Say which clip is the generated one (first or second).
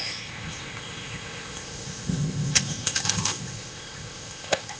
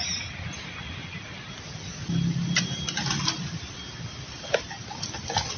first